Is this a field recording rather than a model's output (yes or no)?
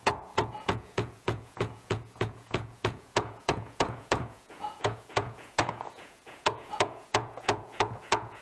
no